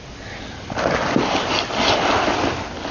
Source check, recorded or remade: recorded